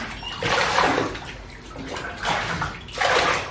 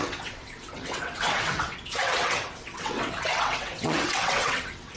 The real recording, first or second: first